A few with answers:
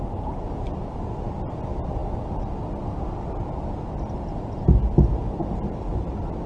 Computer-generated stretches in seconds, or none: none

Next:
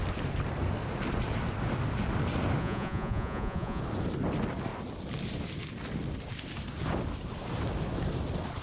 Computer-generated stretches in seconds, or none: 2.6-3.8 (vocoder, Vocos)

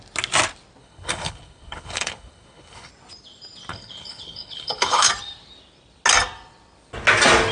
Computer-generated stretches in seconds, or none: 0.8-2.9 (codec, HILCodec); 3.7-5.1

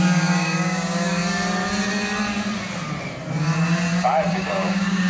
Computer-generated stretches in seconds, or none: 0.0-1.2 (codec, DAC); 4.3-5.1